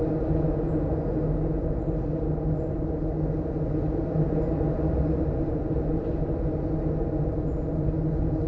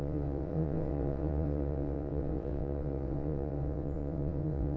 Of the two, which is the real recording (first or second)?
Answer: first